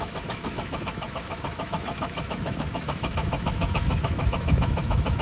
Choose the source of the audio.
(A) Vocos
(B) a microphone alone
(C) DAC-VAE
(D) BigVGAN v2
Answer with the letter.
C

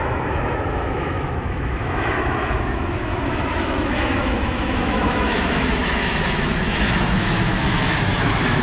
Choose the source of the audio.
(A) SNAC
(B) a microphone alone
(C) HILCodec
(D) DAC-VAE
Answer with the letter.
D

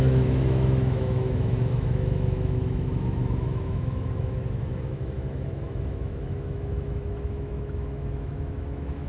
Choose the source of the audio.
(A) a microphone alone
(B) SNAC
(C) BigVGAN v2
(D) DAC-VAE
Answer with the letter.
D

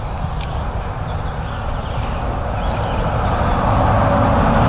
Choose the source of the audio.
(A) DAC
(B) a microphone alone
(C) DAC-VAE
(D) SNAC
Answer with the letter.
B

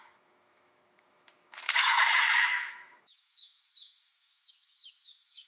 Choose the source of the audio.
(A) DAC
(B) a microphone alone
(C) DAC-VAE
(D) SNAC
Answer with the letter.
C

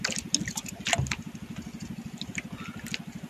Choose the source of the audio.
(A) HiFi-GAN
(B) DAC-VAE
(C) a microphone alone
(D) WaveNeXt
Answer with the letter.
C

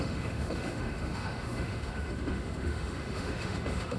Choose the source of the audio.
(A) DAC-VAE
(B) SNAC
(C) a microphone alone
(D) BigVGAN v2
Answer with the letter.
A